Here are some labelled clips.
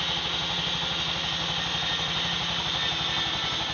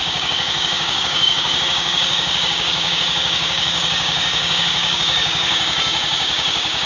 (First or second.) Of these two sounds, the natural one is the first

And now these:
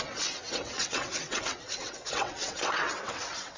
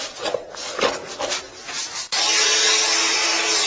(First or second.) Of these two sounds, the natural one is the second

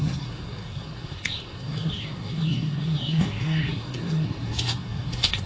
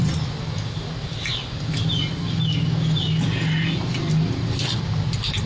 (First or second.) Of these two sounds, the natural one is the second